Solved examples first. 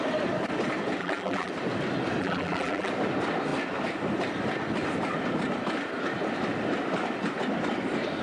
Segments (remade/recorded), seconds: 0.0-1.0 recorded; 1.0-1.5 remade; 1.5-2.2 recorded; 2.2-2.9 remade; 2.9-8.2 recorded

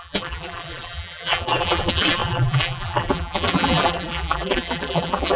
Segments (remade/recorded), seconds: 0.0-5.4 remade

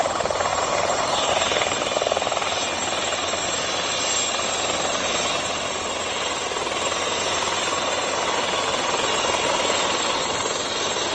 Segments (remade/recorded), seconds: 0.0-0.5 recorded; 0.5-1.3 remade; 1.3-11.1 recorded

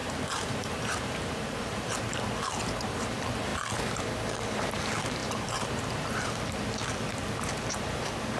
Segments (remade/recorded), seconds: 0.0-2.2 remade; 2.2-5.2 recorded; 5.2-6.3 remade; 6.3-8.4 recorded

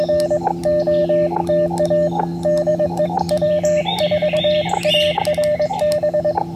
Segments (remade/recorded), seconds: 0.0-2.7 recorded; 2.7-4.9 remade; 4.9-6.6 recorded

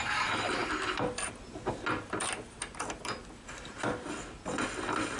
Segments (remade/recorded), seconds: 0.0-5.2 recorded

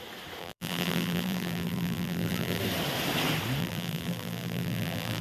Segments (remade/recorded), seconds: 0.0-0.4 recorded; 0.4-2.6 remade; 2.6-3.6 recorded; 3.6-5.2 remade